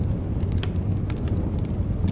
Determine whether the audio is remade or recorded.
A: recorded